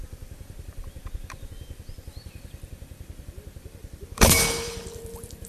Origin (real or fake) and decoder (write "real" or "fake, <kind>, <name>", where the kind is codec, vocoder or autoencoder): fake, vocoder, BigVGAN v2